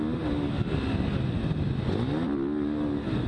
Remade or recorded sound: recorded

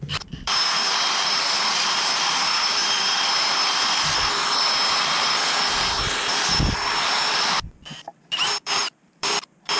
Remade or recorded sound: remade